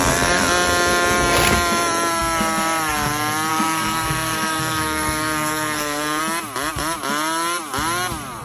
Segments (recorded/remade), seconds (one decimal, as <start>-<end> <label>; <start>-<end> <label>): 0.0-3.5 recorded; 3.5-6.2 remade; 6.2-8.4 recorded